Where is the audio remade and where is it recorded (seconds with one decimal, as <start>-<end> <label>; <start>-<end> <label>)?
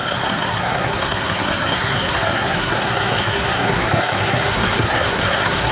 0.0-5.7 remade